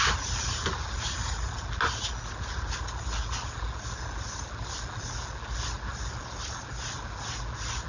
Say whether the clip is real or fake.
real